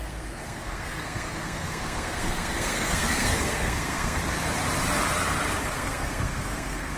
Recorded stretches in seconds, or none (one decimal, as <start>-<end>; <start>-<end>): 4.2-5.6